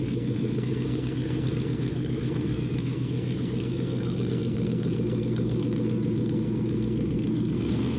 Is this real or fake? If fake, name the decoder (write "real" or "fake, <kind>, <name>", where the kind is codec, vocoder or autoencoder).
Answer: fake, codec, SNAC